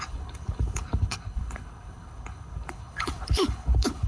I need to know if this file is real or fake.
fake